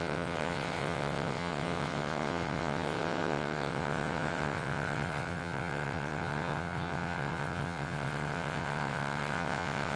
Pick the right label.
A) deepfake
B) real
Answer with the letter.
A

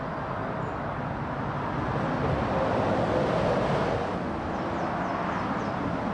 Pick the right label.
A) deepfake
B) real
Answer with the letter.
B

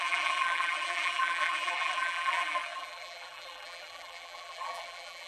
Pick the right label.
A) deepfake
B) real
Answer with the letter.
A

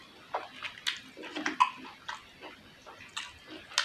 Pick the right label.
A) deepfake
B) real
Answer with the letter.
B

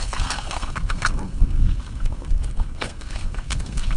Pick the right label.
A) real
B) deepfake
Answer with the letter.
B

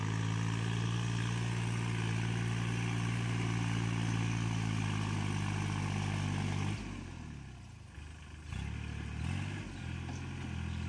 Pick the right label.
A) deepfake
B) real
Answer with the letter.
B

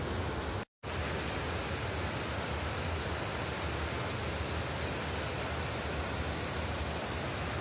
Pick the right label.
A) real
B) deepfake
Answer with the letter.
A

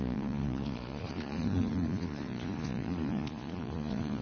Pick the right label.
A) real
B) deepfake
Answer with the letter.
B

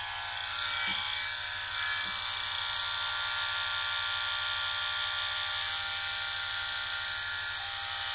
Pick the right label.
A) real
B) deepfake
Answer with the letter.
A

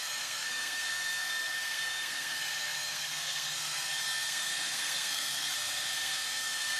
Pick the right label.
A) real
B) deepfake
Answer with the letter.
B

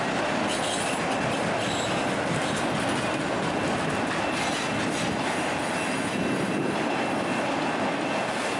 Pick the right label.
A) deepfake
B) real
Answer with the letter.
B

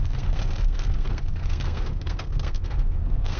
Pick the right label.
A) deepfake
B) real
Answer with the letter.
A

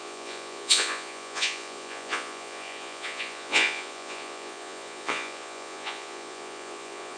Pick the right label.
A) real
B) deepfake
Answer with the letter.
B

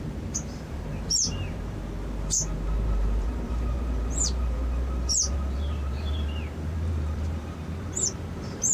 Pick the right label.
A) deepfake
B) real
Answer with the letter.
A